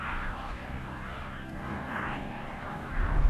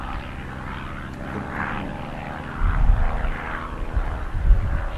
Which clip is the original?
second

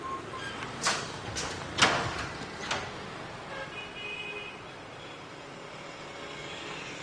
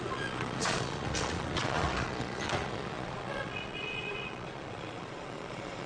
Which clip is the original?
first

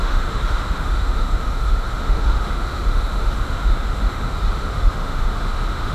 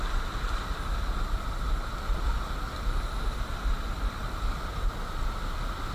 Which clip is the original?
second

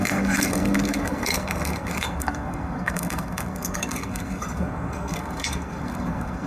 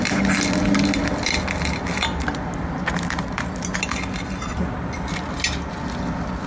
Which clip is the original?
second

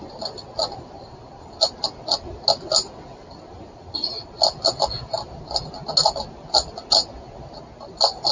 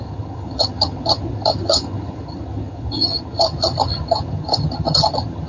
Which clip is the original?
first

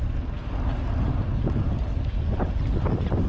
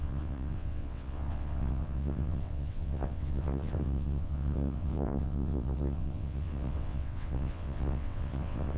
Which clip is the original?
first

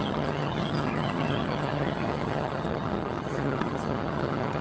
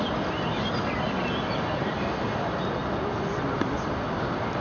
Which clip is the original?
second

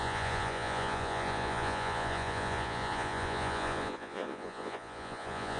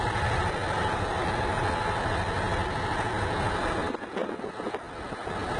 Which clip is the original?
second